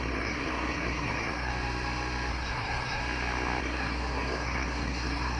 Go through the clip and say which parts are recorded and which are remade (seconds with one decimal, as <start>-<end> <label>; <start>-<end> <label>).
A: 0.0-1.5 remade; 1.5-2.3 recorded; 2.3-3.0 remade; 3.0-3.6 recorded; 3.6-5.4 remade